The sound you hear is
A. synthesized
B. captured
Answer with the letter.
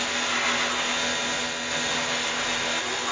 B